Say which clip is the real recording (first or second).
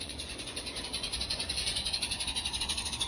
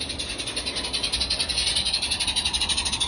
second